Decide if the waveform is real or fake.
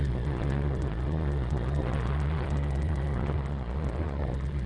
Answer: fake